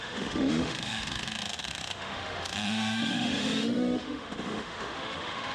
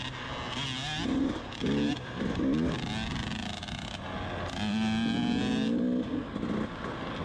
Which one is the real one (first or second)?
second